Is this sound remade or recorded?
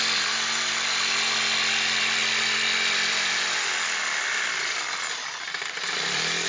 recorded